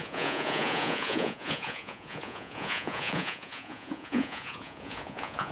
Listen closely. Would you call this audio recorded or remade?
remade